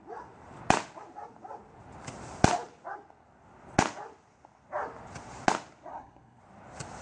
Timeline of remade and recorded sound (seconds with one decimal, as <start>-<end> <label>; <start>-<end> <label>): 0.0-5.9 recorded; 5.9-6.4 remade; 6.4-7.0 recorded